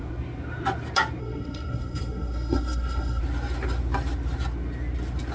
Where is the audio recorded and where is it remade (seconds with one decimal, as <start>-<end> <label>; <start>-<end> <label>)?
0.0-1.2 recorded; 1.2-3.2 remade; 3.2-5.3 recorded